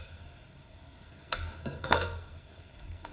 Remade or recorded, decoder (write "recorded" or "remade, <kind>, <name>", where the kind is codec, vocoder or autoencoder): remade, codec, SNAC